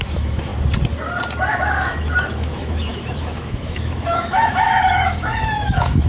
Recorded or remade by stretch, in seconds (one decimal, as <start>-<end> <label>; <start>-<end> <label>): 0.0-0.5 remade; 0.5-1.5 recorded; 1.5-6.1 remade